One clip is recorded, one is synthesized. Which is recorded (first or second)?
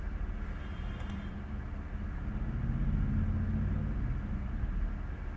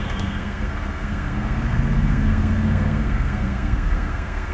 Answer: first